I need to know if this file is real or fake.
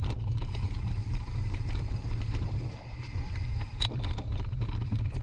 fake